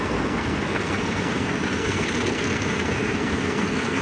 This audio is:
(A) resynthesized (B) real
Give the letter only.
A